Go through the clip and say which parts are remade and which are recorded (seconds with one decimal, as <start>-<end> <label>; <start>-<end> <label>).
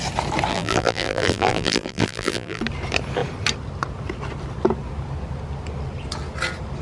0.0-0.5 recorded; 0.5-2.6 remade; 2.6-6.8 recorded